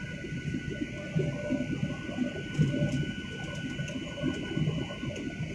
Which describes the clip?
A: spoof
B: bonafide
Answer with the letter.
B